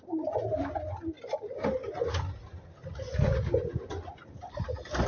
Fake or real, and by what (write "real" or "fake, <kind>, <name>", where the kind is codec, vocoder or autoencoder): real